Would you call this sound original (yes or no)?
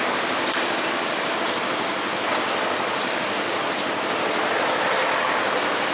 yes